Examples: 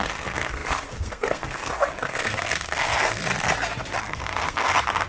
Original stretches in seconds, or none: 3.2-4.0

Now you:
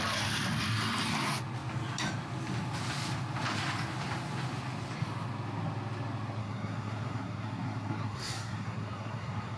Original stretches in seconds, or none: 0.0-6.4